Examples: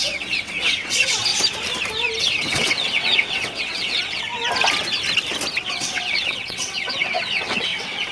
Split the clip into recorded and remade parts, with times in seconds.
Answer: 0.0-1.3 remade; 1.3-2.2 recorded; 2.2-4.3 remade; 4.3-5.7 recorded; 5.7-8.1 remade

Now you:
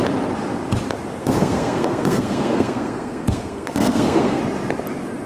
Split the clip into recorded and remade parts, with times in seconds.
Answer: 0.0-1.2 recorded; 1.2-4.4 remade; 4.4-5.3 recorded

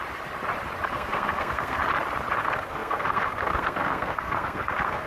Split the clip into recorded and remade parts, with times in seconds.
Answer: 0.0-0.9 recorded; 0.9-1.8 remade; 1.8-2.4 recorded; 2.4-5.1 remade

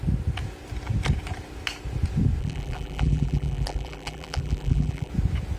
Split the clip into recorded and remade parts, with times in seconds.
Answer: 0.0-2.4 recorded; 2.4-5.1 remade; 5.1-5.6 recorded